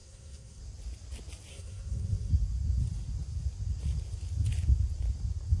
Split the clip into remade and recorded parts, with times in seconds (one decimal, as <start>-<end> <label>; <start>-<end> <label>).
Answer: 0.0-0.6 remade; 0.6-1.5 recorded; 1.5-2.3 remade; 2.3-5.6 recorded